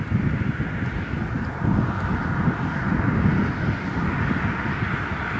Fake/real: real